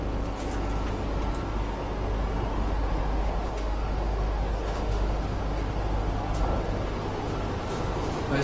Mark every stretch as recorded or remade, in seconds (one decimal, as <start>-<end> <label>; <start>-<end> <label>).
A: 0.0-2.5 recorded; 2.5-5.4 remade; 5.4-8.4 recorded